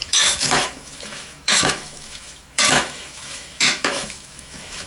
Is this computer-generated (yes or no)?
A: yes